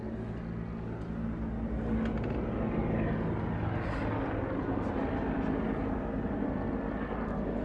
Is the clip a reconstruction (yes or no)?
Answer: no